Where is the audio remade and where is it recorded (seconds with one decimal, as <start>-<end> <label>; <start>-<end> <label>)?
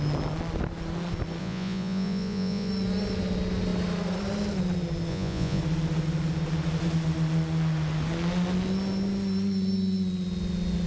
0.0-1.4 recorded; 1.4-2.7 remade; 2.7-5.1 recorded; 5.1-5.6 remade; 5.6-10.9 recorded